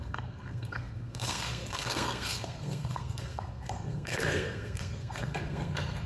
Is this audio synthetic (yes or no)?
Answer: yes